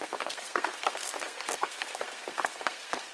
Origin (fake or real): fake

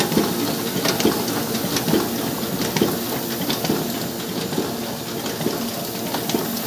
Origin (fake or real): real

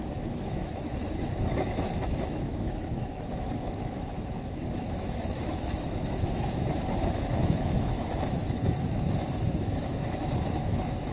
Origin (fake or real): fake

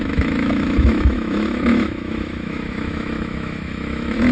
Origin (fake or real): fake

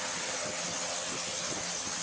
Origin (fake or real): real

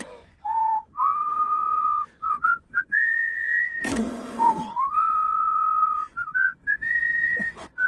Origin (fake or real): fake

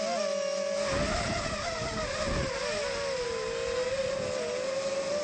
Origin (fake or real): real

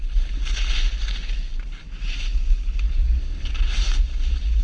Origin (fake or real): real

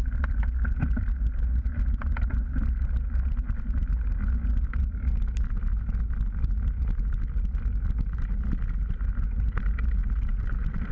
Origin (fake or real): real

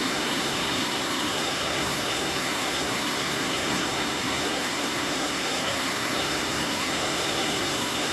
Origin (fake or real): fake